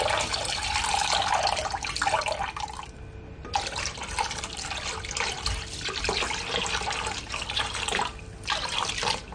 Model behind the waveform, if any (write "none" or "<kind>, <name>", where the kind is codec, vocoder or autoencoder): vocoder, BigVGAN v2